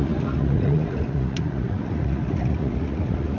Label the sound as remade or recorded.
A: remade